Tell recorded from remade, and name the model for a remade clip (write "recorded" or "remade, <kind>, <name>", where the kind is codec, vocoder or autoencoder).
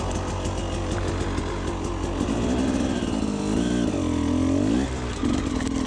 recorded